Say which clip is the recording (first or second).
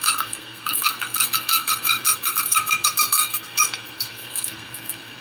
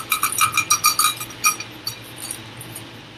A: second